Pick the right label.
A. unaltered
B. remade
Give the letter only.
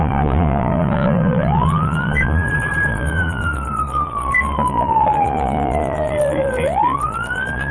B